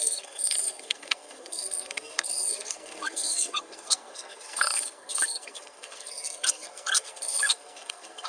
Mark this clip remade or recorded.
remade